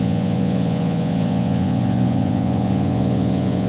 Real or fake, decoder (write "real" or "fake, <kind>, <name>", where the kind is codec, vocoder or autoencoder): fake, vocoder, Vocos